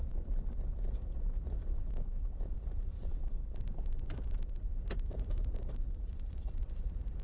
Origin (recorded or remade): remade